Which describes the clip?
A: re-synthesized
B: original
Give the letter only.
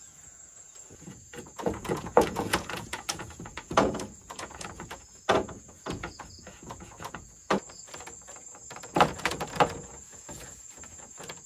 A